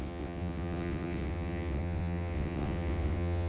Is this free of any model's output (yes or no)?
no